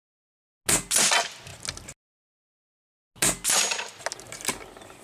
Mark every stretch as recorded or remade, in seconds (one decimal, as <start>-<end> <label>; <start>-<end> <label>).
0.0-5.0 recorded